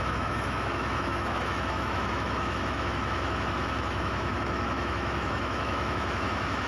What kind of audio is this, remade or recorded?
remade